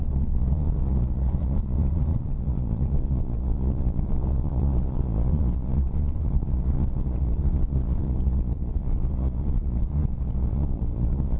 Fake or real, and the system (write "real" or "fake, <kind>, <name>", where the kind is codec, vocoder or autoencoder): fake, vocoder, Vocos